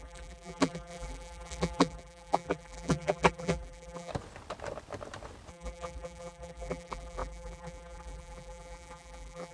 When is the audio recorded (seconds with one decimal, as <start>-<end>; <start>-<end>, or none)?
4.1-5.5